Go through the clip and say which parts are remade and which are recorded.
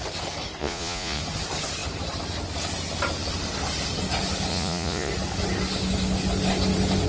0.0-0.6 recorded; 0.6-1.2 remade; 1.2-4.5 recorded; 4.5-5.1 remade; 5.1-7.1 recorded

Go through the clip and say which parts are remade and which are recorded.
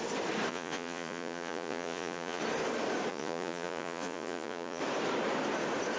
0.0-0.5 recorded; 0.5-2.4 remade; 2.4-3.1 recorded; 3.1-4.8 remade; 4.8-6.0 recorded